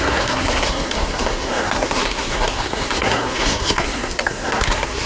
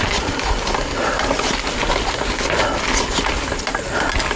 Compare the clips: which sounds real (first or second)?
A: second